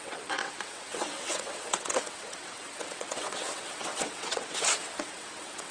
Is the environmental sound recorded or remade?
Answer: remade